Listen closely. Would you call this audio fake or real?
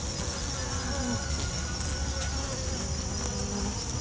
real